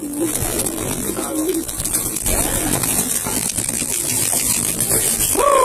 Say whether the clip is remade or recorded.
remade